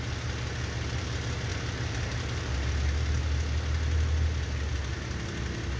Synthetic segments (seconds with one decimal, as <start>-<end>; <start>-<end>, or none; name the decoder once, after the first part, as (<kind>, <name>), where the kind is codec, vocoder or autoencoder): none